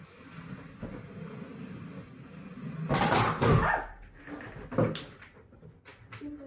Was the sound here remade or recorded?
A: recorded